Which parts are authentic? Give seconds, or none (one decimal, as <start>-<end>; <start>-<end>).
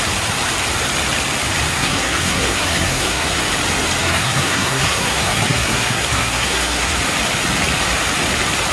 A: 0.0-1.7; 3.4-4.0; 7.0-8.7